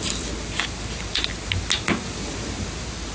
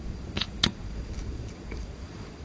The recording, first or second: first